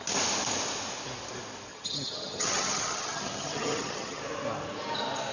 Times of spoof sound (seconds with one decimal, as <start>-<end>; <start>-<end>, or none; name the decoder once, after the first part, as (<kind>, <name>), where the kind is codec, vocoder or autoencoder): 1.7-4.2 (vocoder, HiFi-GAN)